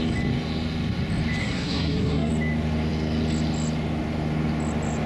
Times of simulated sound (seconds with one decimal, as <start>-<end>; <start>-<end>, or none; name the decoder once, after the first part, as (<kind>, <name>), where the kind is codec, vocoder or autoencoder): 1.4-2.3 (codec, SNAC)